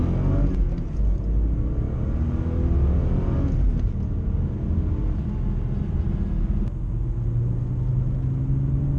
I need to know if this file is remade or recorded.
recorded